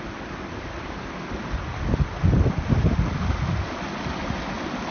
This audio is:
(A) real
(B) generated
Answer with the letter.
A